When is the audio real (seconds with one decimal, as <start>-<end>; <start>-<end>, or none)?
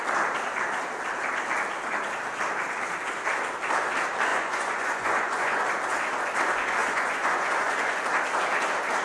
0.0-4.3; 5.6-6.8; 8.0-9.0